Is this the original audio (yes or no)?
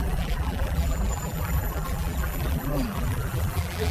no